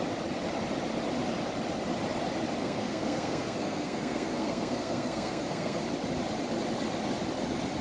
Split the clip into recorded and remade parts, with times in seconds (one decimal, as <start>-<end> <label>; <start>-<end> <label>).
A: 0.0-2.6 recorded; 2.6-5.8 remade; 5.8-7.8 recorded